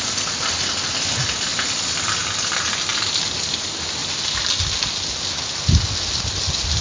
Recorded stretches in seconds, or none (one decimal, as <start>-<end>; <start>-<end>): 0.0-6.8